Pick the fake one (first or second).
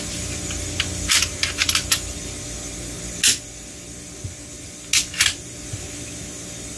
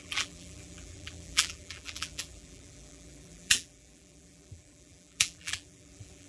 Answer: second